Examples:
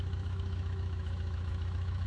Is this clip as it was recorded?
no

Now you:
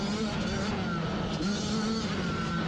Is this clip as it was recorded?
yes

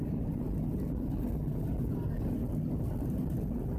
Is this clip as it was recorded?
yes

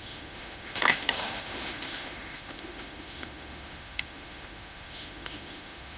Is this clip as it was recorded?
no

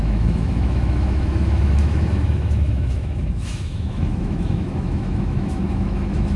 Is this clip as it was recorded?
no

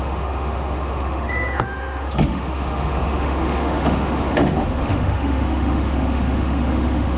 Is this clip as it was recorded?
no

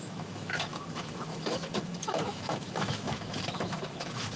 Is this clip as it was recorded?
no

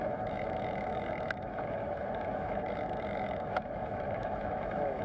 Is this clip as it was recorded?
no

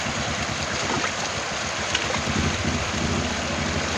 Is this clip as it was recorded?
yes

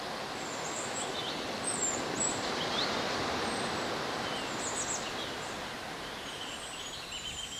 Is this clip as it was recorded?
yes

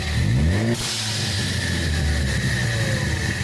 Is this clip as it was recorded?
yes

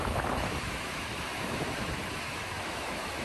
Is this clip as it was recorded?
no